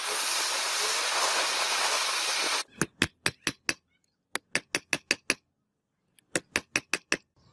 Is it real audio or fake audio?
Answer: real